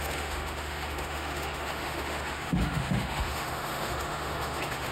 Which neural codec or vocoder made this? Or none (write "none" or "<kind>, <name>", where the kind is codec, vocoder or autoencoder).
autoencoder, DAC-VAE